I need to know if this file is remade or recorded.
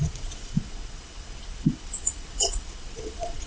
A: remade